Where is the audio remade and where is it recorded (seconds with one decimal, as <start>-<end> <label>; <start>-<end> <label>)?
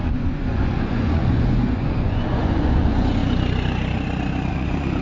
0.0-3.2 remade; 3.2-4.5 recorded; 4.5-5.0 remade